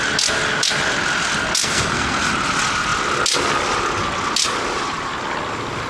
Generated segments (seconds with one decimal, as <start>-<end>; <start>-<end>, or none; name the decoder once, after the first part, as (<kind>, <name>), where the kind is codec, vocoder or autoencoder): 1.6-2.3 (codec, SNAC)